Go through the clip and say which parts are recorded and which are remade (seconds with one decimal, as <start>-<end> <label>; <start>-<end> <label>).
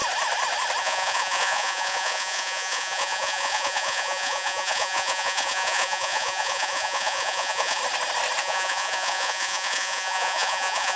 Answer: 0.0-0.8 recorded; 0.8-7.8 remade; 7.8-8.4 recorded; 8.4-11.0 remade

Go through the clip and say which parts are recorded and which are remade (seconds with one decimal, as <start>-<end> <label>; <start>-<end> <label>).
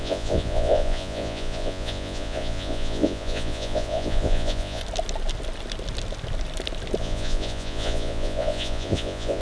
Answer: 0.0-4.8 remade; 4.8-7.0 recorded; 7.0-9.4 remade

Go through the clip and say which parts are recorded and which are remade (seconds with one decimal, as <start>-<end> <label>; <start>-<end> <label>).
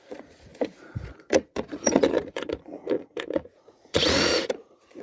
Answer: 0.0-5.0 remade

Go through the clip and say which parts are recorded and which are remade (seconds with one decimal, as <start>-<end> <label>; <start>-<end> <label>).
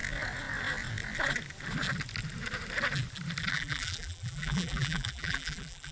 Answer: 0.0-3.5 recorded; 3.5-5.9 remade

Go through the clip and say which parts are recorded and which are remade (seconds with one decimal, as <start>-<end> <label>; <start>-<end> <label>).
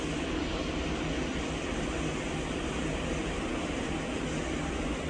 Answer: 0.0-5.1 recorded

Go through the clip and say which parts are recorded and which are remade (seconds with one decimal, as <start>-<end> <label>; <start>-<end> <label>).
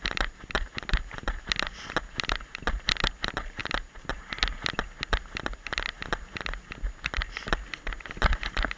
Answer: 0.0-8.8 recorded